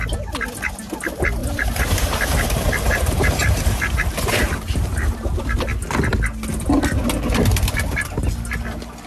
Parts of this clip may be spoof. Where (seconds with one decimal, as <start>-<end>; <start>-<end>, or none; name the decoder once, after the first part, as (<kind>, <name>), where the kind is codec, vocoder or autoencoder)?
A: 1.4-5.1 (vocoder, BigVGAN v2)

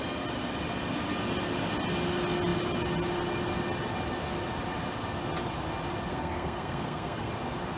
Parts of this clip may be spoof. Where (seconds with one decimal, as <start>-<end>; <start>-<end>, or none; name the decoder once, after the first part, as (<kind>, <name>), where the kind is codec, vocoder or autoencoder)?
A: 6.1-7.3 (codec, SNAC)